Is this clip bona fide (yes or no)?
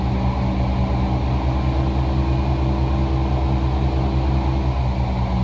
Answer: yes